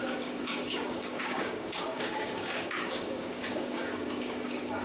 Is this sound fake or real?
fake